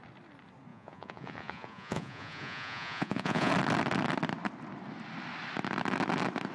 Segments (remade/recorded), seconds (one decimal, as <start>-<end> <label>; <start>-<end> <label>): 0.0-0.7 recorded; 0.7-3.5 remade; 3.5-6.5 recorded